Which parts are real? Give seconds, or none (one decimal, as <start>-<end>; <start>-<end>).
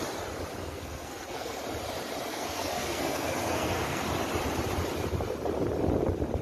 0.0-0.6; 1.6-2.3; 4.0-6.4